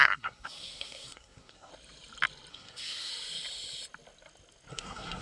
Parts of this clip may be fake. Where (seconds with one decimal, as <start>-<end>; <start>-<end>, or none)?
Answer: 0.0-1.7; 2.5-3.1; 4.7-5.2